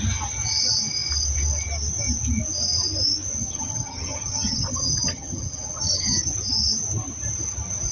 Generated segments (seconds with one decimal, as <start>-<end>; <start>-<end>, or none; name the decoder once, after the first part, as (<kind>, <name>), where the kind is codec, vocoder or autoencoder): 3.4-6.3 (vocoder, HiFi-GAN)